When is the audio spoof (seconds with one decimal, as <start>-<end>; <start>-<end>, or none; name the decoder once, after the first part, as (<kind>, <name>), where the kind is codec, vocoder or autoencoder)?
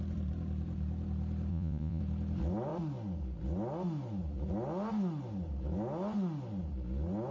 1.5-2.0 (vocoder, Vocos)